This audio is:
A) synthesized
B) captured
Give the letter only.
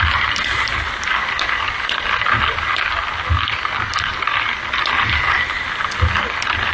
B